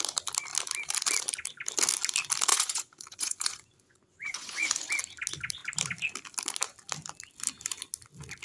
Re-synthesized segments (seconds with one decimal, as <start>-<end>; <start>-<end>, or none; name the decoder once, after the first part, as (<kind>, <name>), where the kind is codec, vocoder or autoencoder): 2.5-4.9 (vocoder, Vocos)